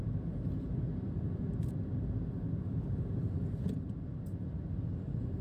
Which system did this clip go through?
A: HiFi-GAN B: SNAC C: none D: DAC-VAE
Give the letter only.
C